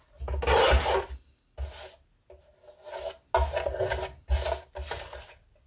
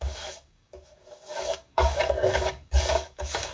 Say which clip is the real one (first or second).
first